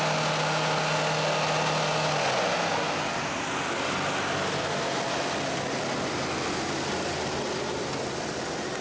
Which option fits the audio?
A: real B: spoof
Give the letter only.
A